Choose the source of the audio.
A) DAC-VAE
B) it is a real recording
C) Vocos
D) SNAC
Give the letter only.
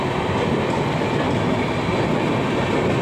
B